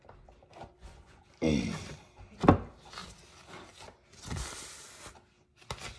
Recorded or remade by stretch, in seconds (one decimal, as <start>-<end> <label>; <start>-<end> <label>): 0.0-0.6 recorded; 0.6-1.2 remade; 1.2-6.0 recorded